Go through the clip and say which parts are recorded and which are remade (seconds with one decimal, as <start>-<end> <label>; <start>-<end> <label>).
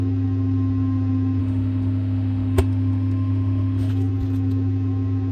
0.0-1.4 recorded; 1.4-3.9 remade; 3.9-5.3 recorded